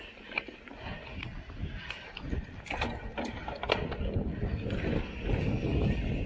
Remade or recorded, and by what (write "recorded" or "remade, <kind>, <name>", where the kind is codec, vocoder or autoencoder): recorded